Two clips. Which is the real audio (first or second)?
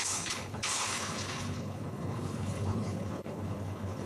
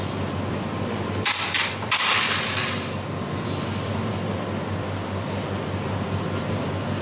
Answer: second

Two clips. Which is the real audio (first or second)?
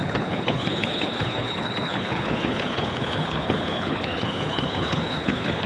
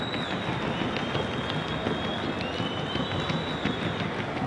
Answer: second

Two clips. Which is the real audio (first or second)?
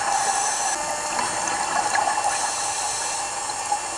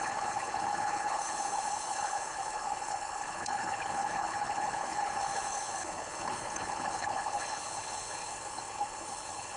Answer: first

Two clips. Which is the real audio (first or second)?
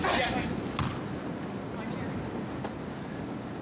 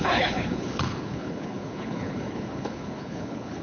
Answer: first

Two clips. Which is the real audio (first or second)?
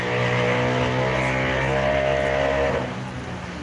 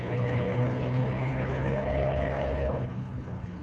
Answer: first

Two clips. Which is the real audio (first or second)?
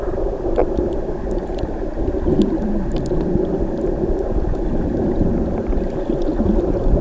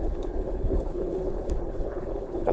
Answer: first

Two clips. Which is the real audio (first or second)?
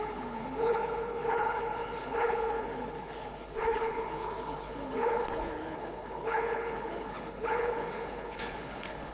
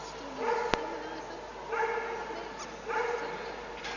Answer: second